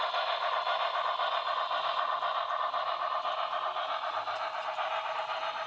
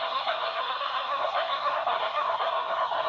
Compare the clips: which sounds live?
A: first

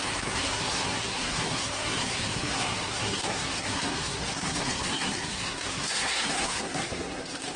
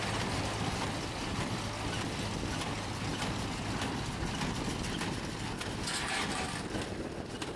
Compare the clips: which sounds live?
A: second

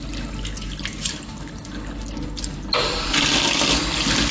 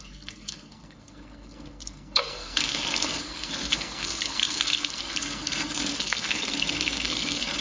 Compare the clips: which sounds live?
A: first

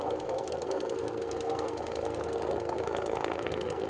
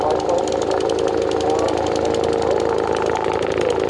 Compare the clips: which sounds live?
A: second